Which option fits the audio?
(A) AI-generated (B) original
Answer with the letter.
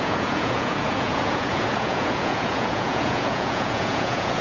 A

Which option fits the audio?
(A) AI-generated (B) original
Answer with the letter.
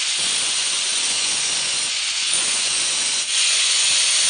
A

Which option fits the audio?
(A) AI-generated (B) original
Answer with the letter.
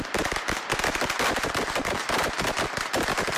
B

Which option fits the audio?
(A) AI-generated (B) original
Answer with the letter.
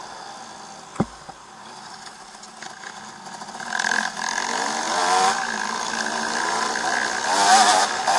B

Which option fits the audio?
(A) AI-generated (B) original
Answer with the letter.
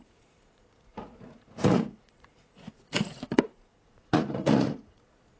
A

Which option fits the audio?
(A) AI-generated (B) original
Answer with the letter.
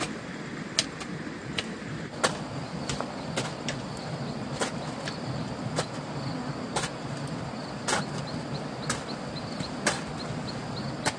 B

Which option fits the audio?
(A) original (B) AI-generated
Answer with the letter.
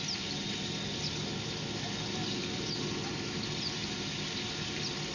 A